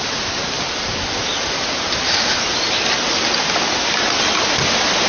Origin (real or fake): real